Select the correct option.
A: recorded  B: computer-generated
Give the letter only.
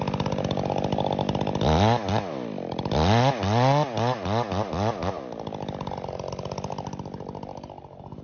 A